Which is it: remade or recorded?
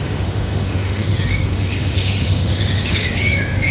remade